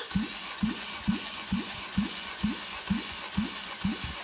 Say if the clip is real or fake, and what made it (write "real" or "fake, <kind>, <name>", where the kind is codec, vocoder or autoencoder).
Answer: fake, vocoder, Vocos